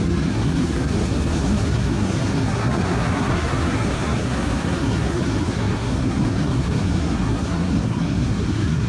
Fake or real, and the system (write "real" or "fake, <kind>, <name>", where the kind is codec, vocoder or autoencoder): fake, codec, SNAC